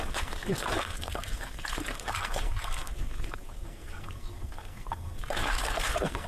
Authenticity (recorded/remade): remade